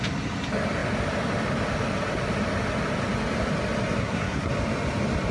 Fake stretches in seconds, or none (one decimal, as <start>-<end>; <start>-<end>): 4.0-4.5